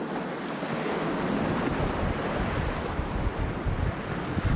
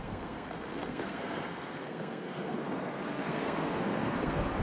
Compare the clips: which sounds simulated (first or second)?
second